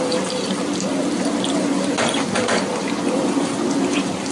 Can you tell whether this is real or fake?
real